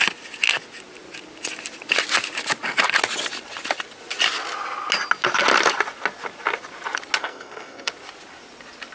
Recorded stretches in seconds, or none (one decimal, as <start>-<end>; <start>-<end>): 0.0-7.2; 7.9-8.9